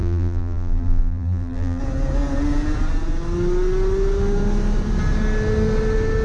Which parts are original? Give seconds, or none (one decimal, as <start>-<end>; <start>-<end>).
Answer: 1.8-6.2